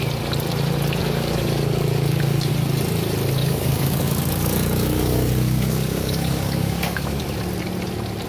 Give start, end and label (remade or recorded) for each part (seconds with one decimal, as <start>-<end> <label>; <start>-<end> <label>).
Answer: 0.0-1.0 recorded; 1.0-2.5 remade; 2.5-3.4 recorded; 3.4-7.2 remade; 7.2-8.3 recorded